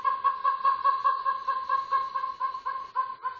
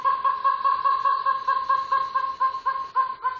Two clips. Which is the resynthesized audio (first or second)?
first